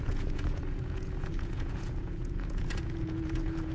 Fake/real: fake